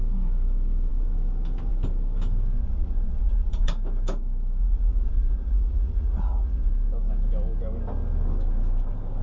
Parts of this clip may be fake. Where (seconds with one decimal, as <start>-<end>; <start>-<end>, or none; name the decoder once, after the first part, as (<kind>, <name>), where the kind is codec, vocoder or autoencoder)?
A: 2.6-3.7 (vocoder, Vocos); 4.6-6.7